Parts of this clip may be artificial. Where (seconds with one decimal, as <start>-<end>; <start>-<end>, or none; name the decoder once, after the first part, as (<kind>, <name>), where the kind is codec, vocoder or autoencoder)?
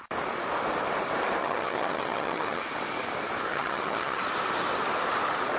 1.4-2.6 (vocoder, HiFi-GAN); 3.5-4.2